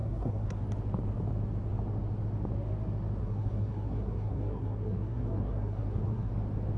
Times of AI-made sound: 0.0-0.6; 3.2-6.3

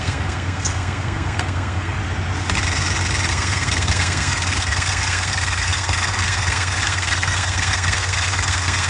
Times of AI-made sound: 0.0-2.0; 3.3-8.9

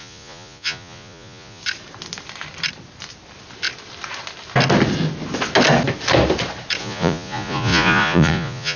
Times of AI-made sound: 0.0-1.6; 6.8-8.8

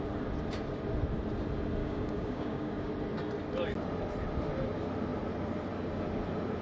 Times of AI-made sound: 1.8-2.9

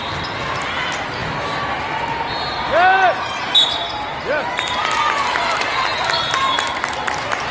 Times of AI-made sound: none

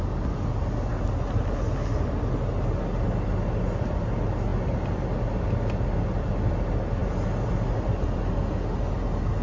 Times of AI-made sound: none